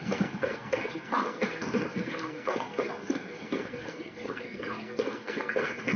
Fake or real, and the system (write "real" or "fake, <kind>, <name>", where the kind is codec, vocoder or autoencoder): fake, codec, SNAC